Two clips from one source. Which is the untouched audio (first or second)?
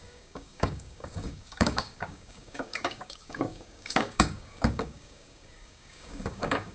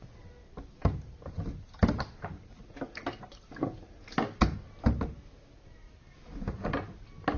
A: second